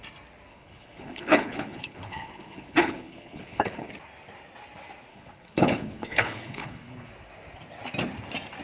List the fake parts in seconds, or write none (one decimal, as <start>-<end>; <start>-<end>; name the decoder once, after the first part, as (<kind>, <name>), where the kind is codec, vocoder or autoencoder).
0.5-3.9 (codec, HILCodec); 5.1-7.1